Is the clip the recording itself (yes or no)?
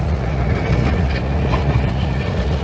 no